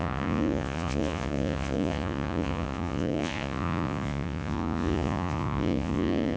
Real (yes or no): no